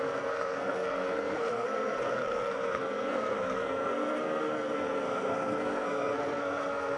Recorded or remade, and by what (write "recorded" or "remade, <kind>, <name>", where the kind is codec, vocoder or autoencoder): remade, codec, SNAC